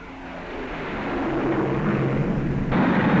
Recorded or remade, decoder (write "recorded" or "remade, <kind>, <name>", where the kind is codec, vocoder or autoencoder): recorded